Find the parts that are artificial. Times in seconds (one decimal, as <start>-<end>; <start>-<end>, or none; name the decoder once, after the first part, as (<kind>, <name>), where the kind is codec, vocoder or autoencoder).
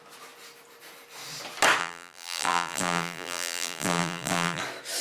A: 1.8-4.6 (vocoder, BigVGAN v2)